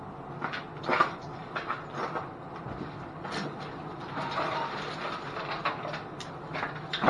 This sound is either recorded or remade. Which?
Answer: recorded